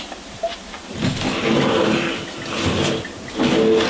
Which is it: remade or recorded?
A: recorded